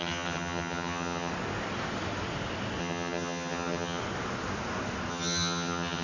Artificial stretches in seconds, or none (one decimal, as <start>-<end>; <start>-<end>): 0.0-1.3; 2.8-4.0; 5.1-6.0